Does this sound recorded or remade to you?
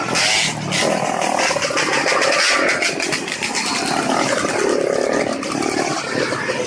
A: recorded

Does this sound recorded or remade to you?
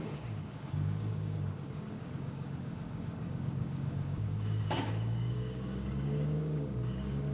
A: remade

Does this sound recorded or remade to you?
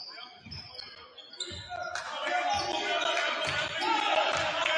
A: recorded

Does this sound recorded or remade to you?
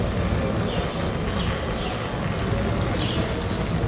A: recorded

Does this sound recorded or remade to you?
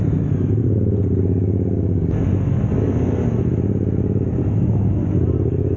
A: recorded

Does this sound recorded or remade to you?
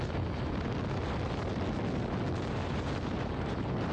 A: recorded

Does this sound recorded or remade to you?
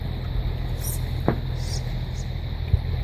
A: recorded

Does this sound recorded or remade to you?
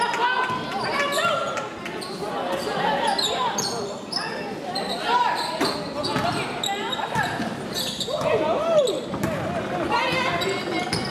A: recorded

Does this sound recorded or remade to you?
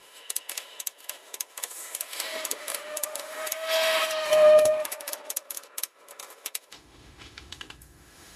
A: remade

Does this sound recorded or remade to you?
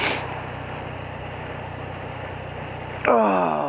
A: recorded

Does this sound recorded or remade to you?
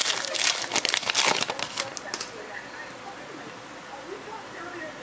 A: recorded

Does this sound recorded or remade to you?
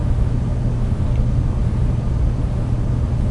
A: recorded